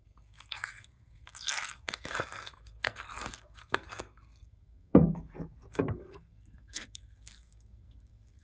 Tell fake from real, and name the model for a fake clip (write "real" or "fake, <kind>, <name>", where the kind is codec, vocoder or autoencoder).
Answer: fake, codec, SNAC